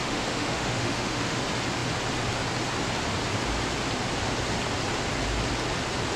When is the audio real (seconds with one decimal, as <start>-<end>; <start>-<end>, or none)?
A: 1.4-6.2